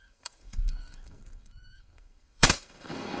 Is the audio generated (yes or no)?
yes